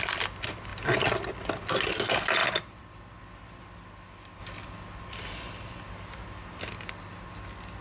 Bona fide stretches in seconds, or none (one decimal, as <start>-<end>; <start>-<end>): 0.0-2.4; 4.4-7.8

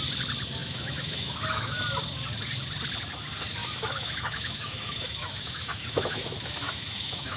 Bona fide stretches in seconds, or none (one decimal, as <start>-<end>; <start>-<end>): 0.0-0.6; 1.8-3.6